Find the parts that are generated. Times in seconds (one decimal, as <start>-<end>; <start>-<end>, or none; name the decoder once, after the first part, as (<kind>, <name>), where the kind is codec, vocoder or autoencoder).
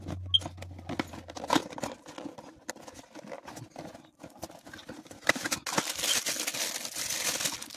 none